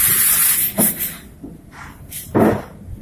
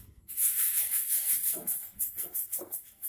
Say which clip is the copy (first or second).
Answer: second